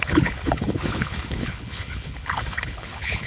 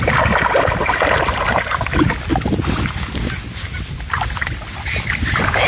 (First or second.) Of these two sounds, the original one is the second